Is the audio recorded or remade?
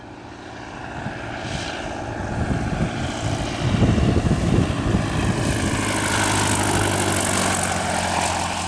recorded